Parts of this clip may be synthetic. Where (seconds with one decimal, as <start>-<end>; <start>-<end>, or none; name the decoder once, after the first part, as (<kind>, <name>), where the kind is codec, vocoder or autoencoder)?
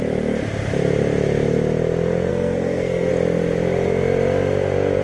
2.3-3.1 (codec, SNAC)